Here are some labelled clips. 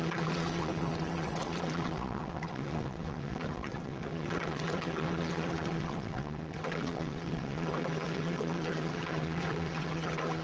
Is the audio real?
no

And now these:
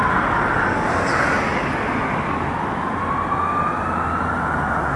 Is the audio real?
yes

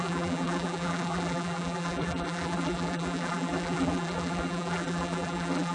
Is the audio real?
no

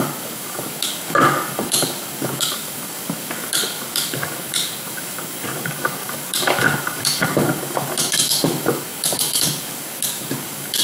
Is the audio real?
no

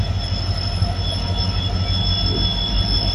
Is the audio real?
yes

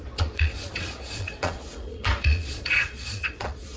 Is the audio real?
no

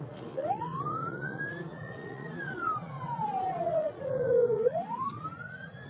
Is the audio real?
no